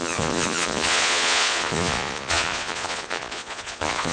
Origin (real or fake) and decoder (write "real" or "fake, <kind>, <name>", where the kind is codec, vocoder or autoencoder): fake, vocoder, Vocos